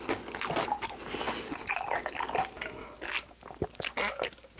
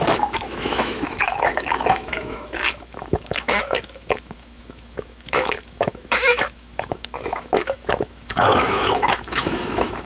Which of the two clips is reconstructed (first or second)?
second